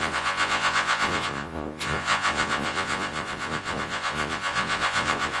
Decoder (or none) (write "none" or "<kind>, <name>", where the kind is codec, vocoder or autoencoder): vocoder, Vocos